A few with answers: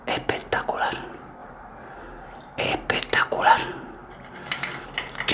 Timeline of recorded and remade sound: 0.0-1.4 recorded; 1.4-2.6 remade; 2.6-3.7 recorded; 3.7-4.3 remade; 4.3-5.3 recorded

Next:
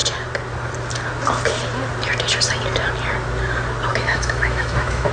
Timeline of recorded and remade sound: 0.0-3.9 recorded; 3.9-5.1 remade